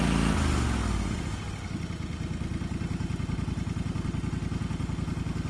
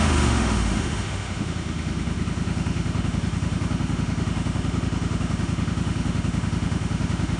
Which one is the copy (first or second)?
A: second